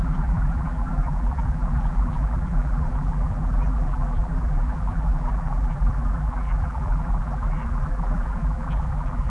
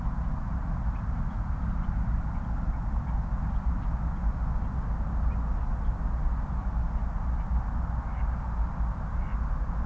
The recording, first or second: second